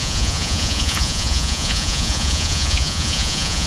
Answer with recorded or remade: remade